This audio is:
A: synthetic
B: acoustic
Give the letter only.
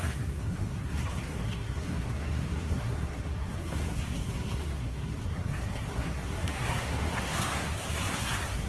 A